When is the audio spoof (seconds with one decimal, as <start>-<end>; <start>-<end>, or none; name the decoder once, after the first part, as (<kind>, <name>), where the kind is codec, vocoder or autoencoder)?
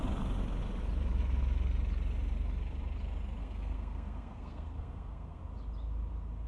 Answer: 3.4-5.4 (codec, SNAC)